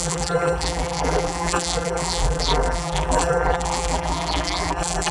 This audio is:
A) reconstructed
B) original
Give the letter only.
A